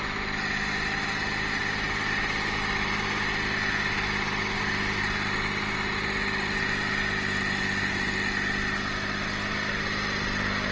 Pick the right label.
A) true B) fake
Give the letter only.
A